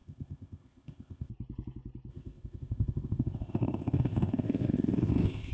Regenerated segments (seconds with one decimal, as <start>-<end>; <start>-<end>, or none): 0.0-1.3; 2.1-5.5